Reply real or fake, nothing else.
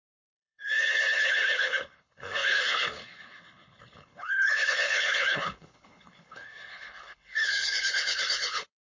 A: fake